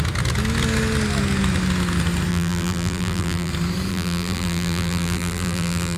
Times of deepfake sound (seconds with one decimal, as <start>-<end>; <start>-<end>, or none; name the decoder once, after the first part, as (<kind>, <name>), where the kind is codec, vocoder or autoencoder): 2.3-3.5 (vocoder, BigVGAN v2); 3.9-6.0